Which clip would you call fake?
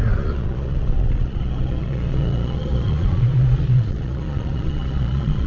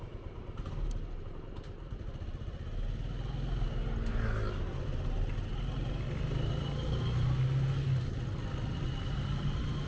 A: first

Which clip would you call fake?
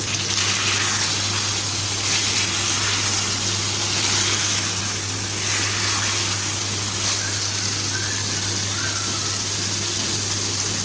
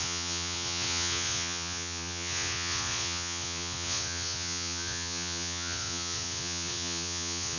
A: second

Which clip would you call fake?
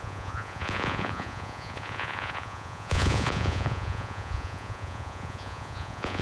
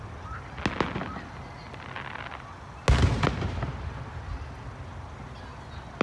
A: first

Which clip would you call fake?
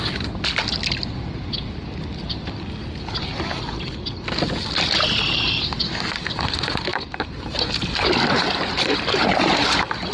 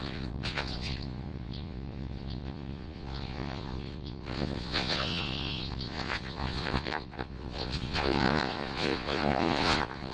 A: second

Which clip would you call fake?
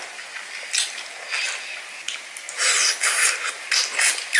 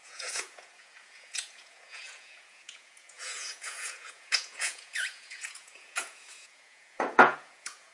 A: second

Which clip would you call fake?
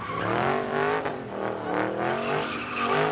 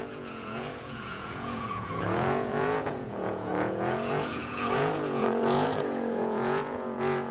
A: second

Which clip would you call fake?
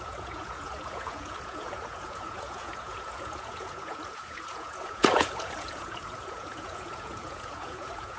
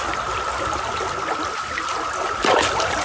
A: first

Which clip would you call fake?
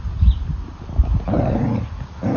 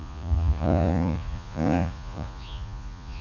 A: second